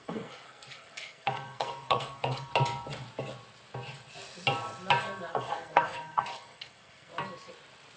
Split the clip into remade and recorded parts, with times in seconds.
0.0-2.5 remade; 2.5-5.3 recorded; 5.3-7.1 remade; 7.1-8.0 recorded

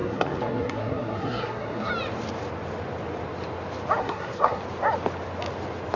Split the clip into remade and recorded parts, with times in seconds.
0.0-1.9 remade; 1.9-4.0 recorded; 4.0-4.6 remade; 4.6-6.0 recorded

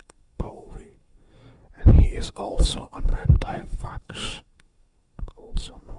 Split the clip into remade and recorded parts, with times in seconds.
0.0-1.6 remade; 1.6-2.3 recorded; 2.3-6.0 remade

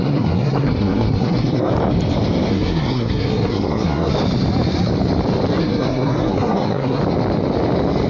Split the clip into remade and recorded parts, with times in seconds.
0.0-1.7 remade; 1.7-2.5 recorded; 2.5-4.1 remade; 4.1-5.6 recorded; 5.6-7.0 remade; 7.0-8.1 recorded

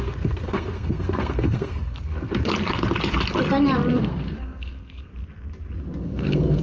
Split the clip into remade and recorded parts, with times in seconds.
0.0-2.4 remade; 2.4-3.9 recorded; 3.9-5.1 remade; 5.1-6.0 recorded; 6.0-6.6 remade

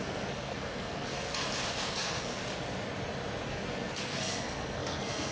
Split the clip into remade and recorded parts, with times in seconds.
0.0-1.3 remade; 1.3-1.9 recorded; 1.9-2.4 remade; 2.4-3.5 recorded; 3.5-5.3 remade